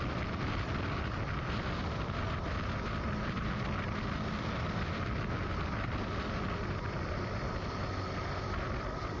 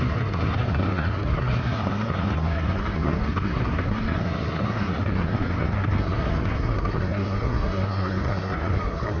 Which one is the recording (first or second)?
first